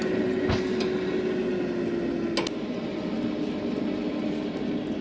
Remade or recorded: recorded